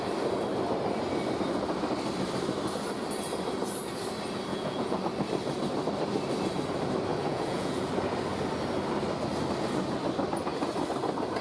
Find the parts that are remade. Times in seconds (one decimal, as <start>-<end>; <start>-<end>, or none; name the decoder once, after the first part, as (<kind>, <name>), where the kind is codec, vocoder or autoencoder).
4.5-5.0 (vocoder, Vocos); 7.1-7.9